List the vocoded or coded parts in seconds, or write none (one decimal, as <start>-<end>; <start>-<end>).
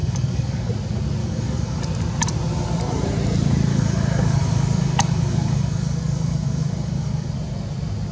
0.0-0.7; 1.2-1.8; 3.7-7.3